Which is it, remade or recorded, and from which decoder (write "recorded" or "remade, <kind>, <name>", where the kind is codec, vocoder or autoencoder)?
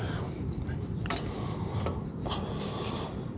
recorded